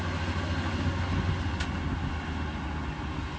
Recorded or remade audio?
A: recorded